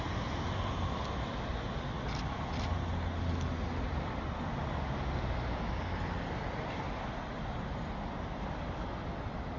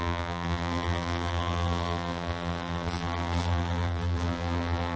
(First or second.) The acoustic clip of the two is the first